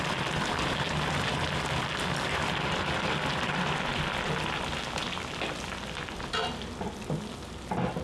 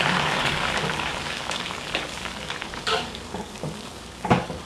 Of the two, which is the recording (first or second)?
first